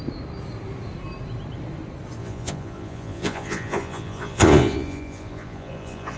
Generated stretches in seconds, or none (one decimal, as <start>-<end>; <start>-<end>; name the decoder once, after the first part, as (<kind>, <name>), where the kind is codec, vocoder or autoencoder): 2.2-6.2 (vocoder, Vocos)